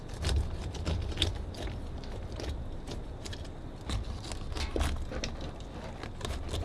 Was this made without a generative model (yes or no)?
yes